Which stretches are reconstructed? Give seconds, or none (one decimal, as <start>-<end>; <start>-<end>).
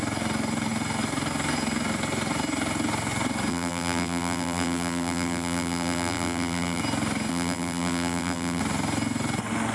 3.5-6.8; 7.3-8.6